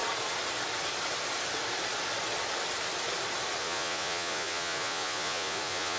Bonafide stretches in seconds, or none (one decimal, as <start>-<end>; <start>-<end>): 0.0-3.6

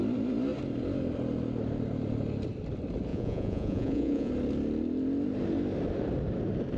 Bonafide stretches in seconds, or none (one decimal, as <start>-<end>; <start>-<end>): 0.0-3.1; 4.3-6.8

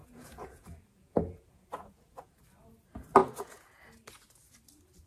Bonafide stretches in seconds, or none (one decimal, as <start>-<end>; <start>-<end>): 2.4-3.2; 3.8-5.1

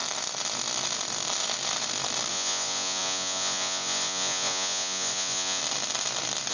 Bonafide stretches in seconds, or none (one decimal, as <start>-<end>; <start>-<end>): 0.0-2.3; 5.6-6.5

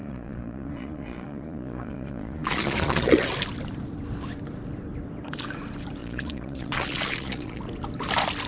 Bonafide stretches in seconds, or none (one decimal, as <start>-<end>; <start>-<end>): 3.3-6.0; 7.6-8.5

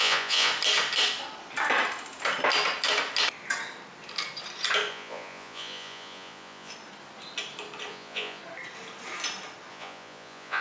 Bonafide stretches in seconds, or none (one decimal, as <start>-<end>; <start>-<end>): 0.5-4.9; 6.7-7.9; 8.4-9.7

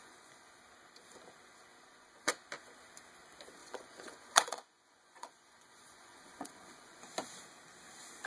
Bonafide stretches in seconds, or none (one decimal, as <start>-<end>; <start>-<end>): 0.6-1.7; 2.3-3.6; 7.0-8.3